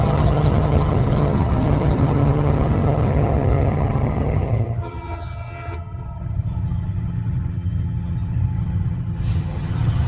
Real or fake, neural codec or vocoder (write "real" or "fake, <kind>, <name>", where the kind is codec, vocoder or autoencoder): fake, vocoder, HiFi-GAN